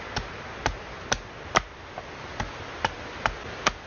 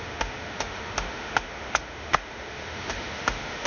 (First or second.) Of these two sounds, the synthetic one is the second